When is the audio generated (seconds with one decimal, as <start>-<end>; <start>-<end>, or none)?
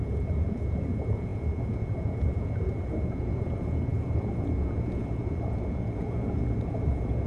0.0-7.3